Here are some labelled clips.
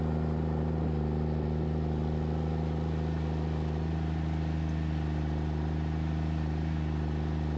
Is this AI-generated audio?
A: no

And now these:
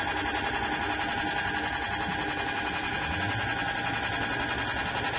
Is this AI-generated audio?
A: no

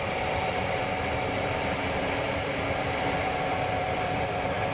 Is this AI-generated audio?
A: yes